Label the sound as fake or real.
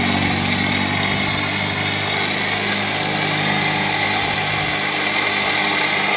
real